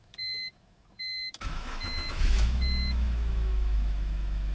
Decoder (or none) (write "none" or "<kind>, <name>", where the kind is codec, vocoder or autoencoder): autoencoder, DAC-VAE